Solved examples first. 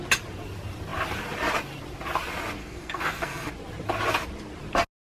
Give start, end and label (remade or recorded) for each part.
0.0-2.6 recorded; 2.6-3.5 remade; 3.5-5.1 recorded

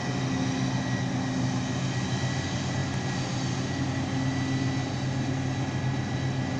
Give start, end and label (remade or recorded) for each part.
0.0-6.6 recorded

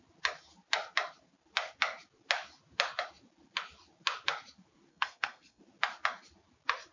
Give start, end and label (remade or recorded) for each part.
0.0-4.9 recorded; 4.9-5.6 remade; 5.6-6.9 recorded